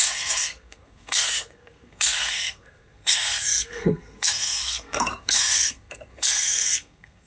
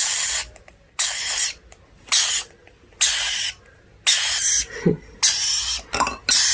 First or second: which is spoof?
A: first